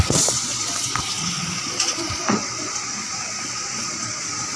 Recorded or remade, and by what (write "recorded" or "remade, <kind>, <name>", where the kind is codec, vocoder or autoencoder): remade, vocoder, Vocos